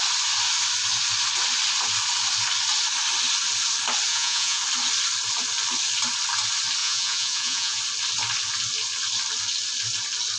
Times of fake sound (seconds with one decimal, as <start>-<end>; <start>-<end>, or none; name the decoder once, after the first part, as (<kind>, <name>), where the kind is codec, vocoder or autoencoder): 4.1-4.6 (vocoder, Vocos); 6.8-7.8